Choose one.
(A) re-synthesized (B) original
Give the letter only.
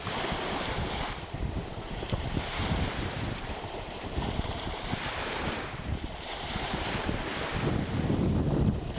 A